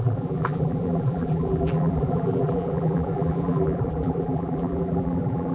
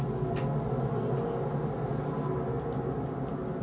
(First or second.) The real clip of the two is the second